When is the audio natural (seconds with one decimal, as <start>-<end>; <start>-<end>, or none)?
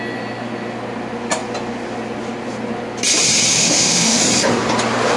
0.0-3.5; 4.2-5.2